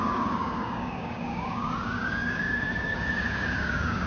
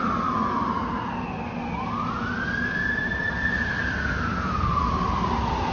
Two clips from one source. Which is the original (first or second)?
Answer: second